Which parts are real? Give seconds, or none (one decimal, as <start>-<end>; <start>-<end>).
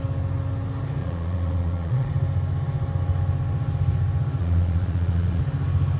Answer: 0.0-1.0; 2.1-4.4; 5.4-6.0